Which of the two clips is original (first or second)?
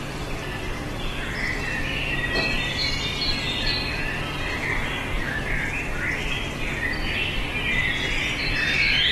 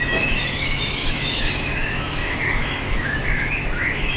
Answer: first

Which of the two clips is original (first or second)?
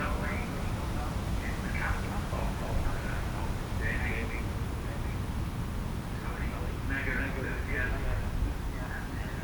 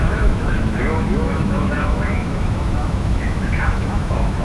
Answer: first